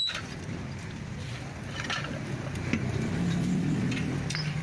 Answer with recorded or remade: recorded